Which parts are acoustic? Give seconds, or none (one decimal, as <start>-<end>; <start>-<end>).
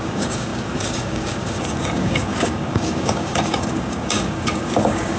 none